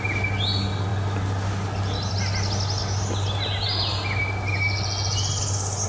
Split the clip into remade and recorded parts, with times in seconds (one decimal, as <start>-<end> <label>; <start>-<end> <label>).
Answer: 0.0-5.9 recorded